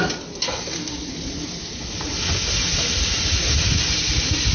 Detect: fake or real real